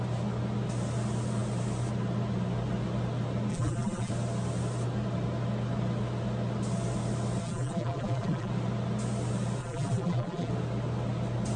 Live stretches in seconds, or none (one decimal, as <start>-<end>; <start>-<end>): 0.0-3.5; 4.1-7.4; 8.5-9.6; 10.5-11.6